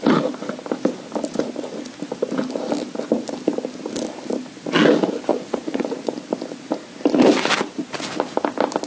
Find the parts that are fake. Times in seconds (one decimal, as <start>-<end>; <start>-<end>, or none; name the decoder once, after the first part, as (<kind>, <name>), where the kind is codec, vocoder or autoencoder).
5.3-6.1 (vocoder, Vocos)